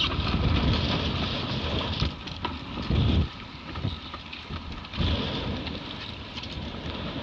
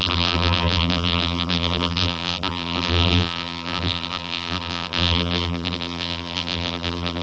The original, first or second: first